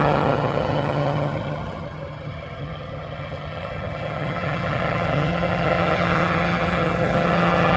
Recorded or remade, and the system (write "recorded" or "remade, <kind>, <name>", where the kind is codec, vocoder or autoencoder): remade, vocoder, HiFi-GAN